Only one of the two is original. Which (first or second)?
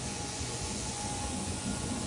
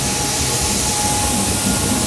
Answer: second